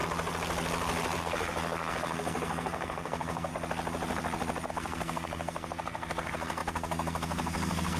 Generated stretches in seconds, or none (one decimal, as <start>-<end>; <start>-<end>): 1.2-3.5; 4.7-8.0